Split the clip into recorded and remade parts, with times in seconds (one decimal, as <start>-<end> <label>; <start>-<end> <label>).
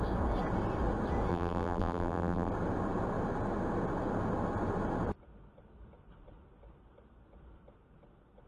0.0-1.3 recorded; 1.3-2.5 remade; 2.5-8.5 recorded